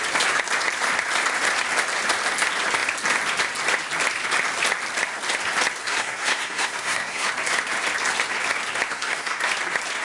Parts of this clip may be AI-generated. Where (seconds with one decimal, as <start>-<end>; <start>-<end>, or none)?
5.8-7.3; 8.9-9.4